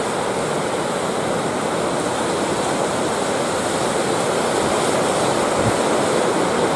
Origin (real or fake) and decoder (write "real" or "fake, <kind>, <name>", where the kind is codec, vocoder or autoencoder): real